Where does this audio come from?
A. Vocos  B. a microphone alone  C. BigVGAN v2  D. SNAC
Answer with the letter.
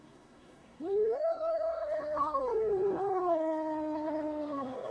D